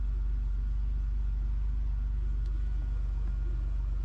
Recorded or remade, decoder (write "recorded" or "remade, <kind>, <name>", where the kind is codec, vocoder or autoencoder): recorded